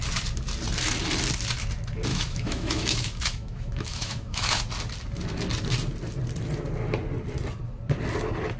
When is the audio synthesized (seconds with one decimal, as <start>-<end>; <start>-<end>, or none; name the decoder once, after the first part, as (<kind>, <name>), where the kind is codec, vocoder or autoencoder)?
2.1-4.6 (autoencoder, DAC-VAE)